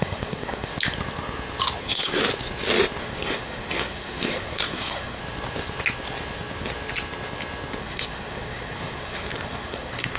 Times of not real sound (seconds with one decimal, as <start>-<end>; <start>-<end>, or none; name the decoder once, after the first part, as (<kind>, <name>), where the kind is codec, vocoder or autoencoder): 0.0-0.7 (codec, SNAC); 1.8-2.2; 3.0-5.2; 7.8-10.2